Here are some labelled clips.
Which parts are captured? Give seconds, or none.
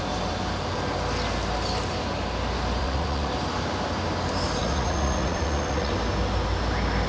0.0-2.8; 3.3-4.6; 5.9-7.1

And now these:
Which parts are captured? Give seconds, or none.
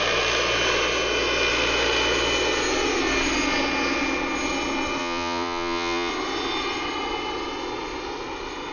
0.0-5.0; 6.1-8.7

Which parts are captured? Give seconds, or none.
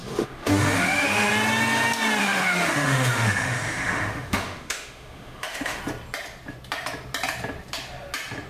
1.3-2.2; 5.8-8.5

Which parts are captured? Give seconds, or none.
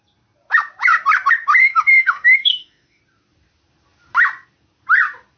0.0-1.6; 3.0-5.4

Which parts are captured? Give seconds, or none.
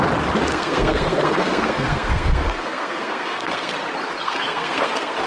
0.0-0.5; 3.7-4.2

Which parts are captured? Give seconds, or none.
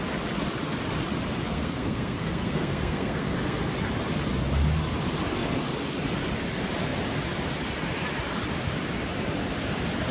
0.0-1.5; 3.6-10.1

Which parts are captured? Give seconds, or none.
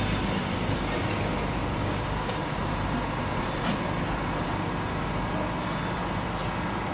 0.0-1.8; 2.6-6.9